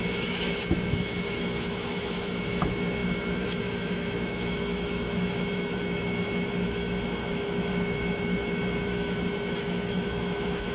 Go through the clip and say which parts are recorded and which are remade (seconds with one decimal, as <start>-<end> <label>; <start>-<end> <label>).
0.0-10.7 remade